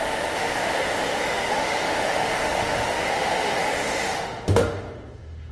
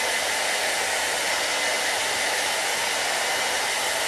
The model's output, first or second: first